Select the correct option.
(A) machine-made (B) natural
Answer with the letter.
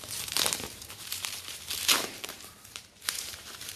A